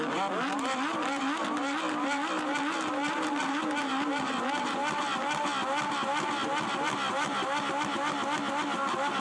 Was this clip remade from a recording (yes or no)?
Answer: no